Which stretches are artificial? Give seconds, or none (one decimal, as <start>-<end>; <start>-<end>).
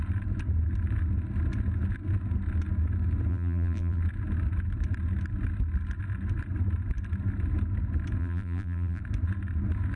3.3-4.0; 8.2-9.0